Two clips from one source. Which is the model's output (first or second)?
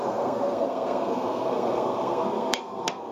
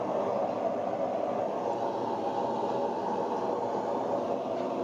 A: first